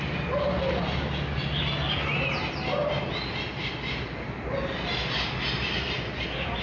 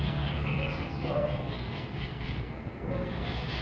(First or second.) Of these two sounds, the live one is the first